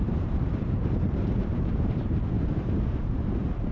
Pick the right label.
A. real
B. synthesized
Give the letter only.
B